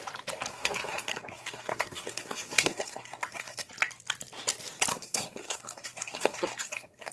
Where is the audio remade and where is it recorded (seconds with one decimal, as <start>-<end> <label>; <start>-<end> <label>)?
0.0-0.5 recorded; 0.5-3.7 remade; 3.7-4.9 recorded; 4.9-7.1 remade